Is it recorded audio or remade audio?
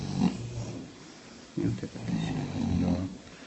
recorded